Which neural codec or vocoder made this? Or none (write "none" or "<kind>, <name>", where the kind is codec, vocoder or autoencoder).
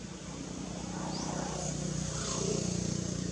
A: none